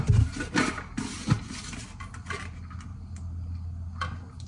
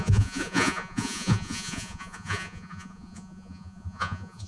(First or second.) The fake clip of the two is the second